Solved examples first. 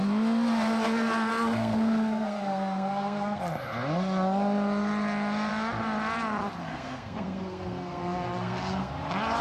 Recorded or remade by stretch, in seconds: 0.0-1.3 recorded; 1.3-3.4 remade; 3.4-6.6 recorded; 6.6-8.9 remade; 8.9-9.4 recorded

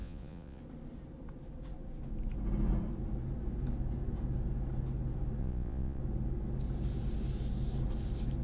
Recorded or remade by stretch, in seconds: 0.0-0.6 remade; 0.6-5.4 recorded; 5.4-6.0 remade; 6.0-8.4 recorded